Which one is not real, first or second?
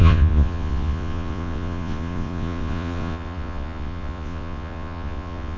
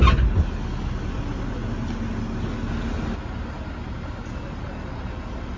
first